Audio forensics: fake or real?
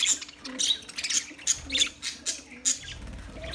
real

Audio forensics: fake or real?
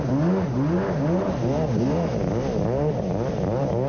real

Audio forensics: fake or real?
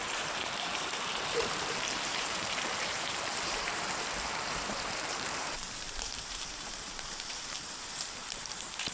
fake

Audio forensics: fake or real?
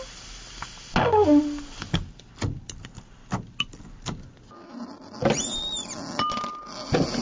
real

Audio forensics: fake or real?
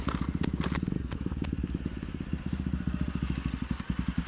real